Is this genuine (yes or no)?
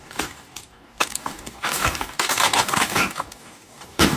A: no